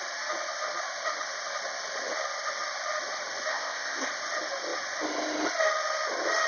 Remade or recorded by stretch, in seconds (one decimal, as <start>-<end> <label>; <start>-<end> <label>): 0.0-3.5 recorded; 3.5-4.1 remade; 4.1-6.5 recorded